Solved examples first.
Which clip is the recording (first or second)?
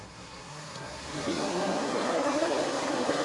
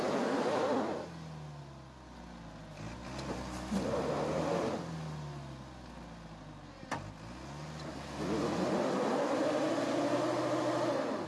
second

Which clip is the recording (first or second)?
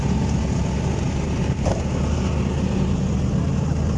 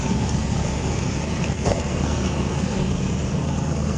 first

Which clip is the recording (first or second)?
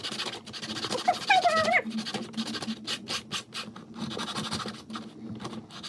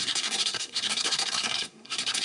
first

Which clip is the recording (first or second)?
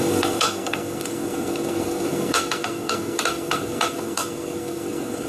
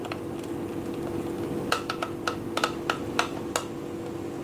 second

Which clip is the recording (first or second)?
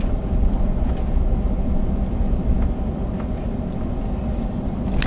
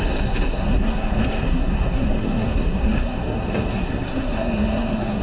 first